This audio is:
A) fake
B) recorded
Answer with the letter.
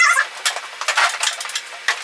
B